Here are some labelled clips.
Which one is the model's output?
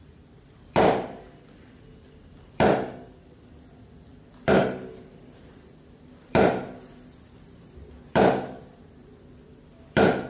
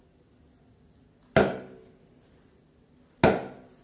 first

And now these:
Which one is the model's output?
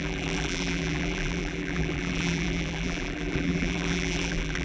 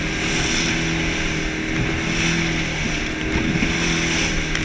first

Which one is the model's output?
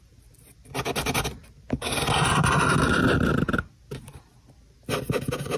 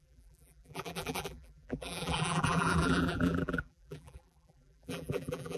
second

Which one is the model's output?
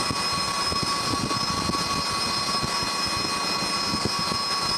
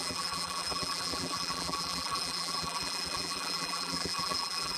second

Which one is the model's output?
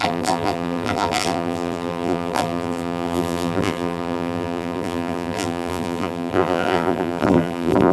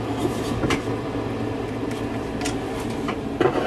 first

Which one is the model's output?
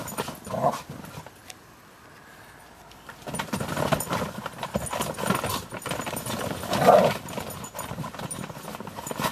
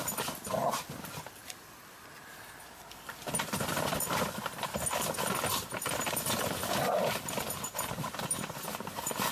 second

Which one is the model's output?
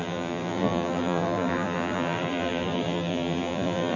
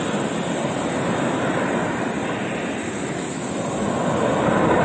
first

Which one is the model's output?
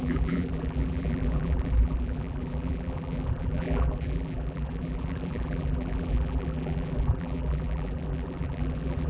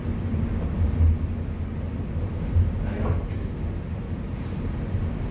first